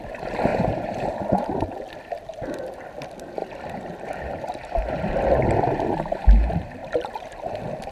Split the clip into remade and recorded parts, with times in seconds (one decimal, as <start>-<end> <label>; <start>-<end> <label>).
0.0-0.5 recorded; 0.5-1.6 remade; 1.6-7.9 recorded